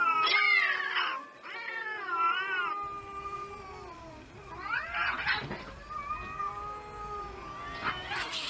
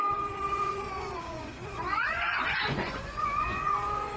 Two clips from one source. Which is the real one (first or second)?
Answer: first